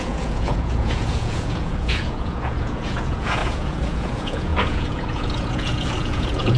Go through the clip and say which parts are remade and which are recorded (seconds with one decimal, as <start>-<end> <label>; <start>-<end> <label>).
0.0-6.6 remade